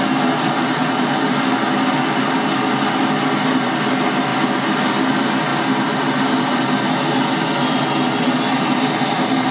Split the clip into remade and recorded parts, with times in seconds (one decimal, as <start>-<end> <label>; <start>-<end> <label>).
0.0-9.5 recorded